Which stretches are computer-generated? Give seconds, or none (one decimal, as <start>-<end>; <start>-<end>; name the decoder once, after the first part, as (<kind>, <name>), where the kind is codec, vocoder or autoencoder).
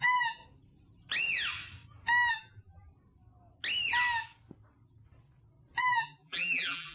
0.0-0.4 (vocoder, BigVGAN v2); 2.3-2.9; 5.8-6.9